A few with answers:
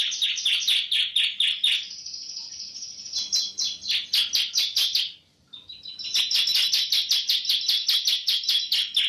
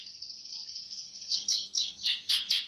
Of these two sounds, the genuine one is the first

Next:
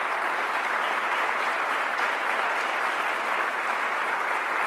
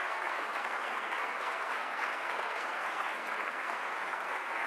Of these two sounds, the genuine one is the first